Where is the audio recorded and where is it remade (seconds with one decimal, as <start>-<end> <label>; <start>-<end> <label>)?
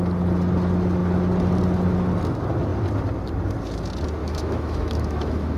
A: 0.0-4.2 recorded; 4.2-5.6 remade